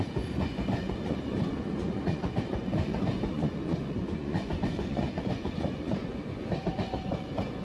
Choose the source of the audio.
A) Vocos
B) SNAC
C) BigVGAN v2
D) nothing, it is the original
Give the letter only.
A